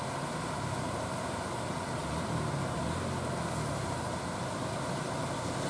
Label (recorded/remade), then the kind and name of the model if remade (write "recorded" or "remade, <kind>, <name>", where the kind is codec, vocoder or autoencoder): recorded